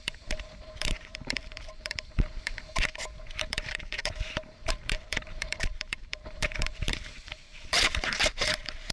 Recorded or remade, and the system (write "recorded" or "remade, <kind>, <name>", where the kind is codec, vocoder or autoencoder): remade, vocoder, BigVGAN v2